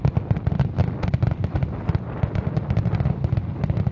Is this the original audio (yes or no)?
yes